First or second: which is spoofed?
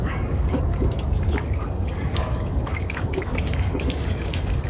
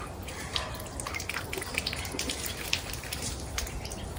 first